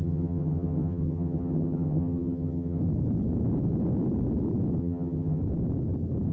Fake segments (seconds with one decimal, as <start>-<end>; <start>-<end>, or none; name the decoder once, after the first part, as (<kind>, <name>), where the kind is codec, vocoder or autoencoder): 0.0-2.8 (vocoder, HiFi-GAN); 4.8-5.4